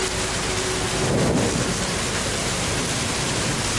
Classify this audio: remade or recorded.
recorded